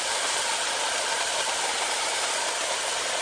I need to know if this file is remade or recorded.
recorded